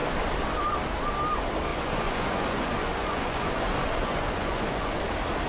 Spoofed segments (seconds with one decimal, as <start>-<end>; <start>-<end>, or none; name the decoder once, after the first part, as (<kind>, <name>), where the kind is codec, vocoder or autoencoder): 1.7-5.0 (vocoder, Vocos)